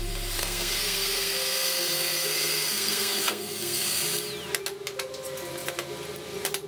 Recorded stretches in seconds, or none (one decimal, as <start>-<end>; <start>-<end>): 0.0-0.4; 4.0-6.7